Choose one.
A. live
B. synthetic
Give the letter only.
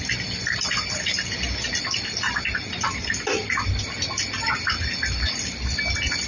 A